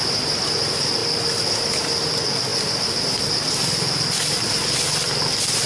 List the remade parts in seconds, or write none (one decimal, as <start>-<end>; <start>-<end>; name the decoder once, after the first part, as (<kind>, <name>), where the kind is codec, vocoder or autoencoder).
none